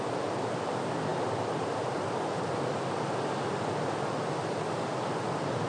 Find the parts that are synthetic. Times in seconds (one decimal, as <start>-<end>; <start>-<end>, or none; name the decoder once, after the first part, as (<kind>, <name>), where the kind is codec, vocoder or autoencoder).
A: none